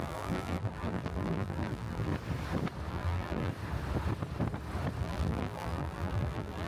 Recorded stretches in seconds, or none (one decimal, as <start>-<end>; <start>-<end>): 2.1-2.9; 3.5-5.0